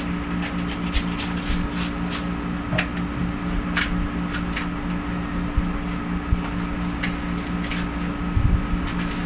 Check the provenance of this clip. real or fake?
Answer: real